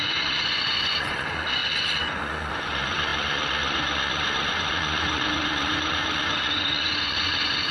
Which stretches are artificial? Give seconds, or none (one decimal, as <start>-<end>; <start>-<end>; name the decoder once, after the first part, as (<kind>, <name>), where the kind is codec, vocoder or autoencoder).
0.0-7.7 (vocoder, Vocos)